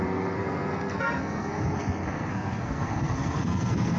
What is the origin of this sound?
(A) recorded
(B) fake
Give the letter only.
B